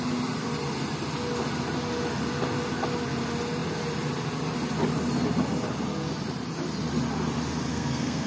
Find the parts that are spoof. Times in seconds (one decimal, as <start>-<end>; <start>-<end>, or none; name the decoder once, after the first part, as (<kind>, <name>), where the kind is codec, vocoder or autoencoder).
7.7-8.3 (codec, SNAC)

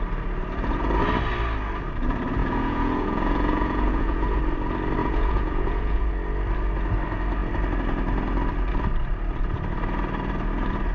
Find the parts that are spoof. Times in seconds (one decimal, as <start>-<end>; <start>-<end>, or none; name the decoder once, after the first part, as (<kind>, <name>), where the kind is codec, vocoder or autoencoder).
2.4-4.4 (vocoder, Vocos); 5.0-6.1

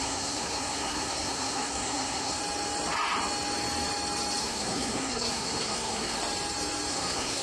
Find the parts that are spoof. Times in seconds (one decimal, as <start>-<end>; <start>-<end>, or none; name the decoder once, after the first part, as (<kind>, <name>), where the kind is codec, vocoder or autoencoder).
0.0-2.4 (codec, SNAC); 4.4-6.2; 6.9-7.4

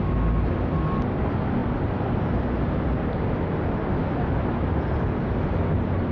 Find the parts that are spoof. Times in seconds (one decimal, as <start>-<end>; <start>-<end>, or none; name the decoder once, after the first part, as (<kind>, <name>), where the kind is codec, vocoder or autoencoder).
1.6-2.2 (vocoder, BigVGAN v2); 4.0-6.1

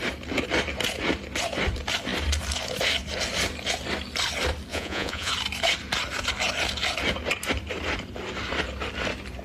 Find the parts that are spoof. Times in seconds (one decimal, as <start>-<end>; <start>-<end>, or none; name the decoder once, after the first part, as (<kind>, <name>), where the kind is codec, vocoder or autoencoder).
4.7-5.3 (vocoder, Vocos)

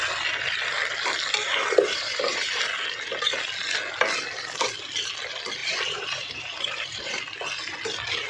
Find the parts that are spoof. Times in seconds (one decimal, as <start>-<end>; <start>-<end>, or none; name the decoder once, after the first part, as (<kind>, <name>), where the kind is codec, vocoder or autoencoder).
1.4-2.6 (vocoder, BigVGAN v2); 5.6-7.2

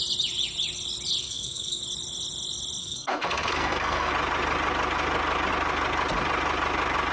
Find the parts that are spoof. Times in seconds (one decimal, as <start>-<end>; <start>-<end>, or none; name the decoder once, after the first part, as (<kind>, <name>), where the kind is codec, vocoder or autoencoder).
1.2-1.8 (codec, SNAC); 2.8-4.1

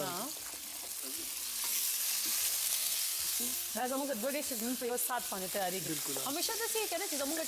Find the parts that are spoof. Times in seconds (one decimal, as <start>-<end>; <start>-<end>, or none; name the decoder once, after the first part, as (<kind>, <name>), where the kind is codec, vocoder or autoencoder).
2.6-4.9 (codec, SNAC)